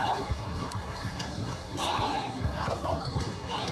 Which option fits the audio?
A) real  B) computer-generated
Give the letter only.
B